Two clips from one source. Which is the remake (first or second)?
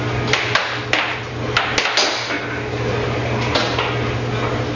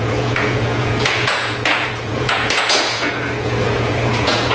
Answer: second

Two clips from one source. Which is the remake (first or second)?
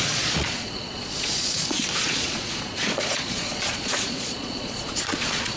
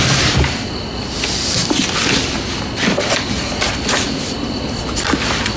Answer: first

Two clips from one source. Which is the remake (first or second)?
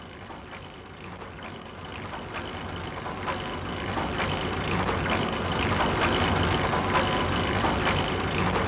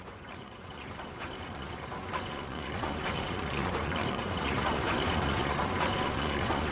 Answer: second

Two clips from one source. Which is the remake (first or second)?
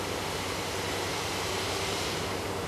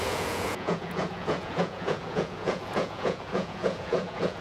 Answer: second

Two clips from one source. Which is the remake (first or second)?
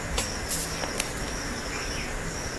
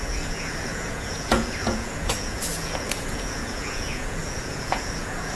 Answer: second